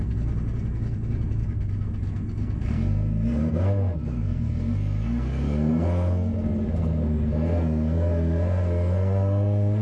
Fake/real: fake